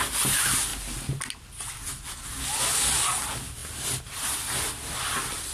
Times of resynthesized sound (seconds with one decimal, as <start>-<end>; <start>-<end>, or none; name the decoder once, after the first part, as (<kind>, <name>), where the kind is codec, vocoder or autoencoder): none